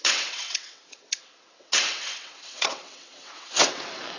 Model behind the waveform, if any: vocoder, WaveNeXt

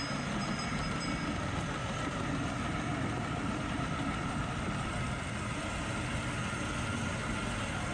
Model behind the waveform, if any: none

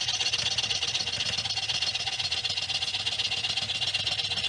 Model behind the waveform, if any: none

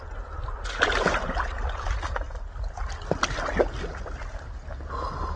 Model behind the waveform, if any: none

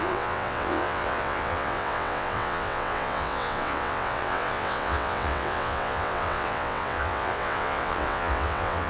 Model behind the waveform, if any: vocoder, WaveNeXt